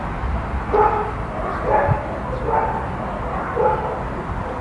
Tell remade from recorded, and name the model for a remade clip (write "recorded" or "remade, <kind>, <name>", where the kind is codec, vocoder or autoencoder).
recorded